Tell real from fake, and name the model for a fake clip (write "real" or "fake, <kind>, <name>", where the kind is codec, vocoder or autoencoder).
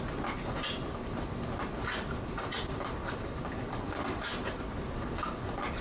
real